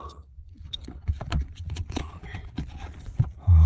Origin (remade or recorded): remade